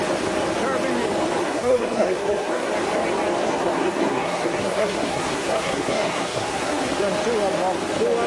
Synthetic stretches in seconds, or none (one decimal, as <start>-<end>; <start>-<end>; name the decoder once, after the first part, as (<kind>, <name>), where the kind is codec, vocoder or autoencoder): 1.4-2.7 (codec, SNAC); 3.4-7.0